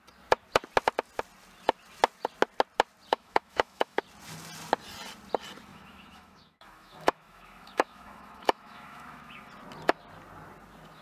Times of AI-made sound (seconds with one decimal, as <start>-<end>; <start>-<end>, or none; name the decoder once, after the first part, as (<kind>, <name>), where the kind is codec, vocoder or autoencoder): 3.1-4.0 (autoencoder, DAC-VAE); 5.7-9.5